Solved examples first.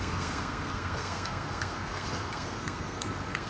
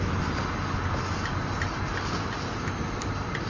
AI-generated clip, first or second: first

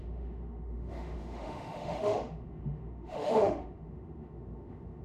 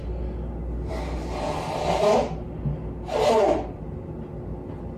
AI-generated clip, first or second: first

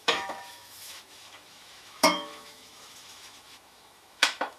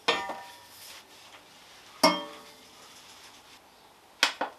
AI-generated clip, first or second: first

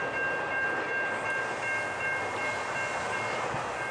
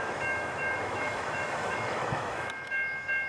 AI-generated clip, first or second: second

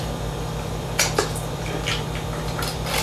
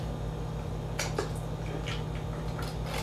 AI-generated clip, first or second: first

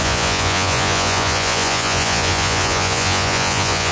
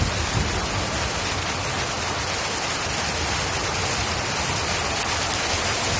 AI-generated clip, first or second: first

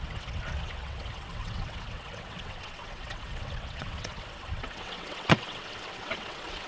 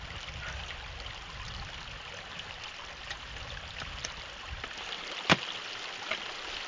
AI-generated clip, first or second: first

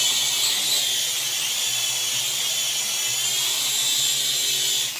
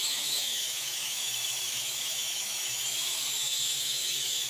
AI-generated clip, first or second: second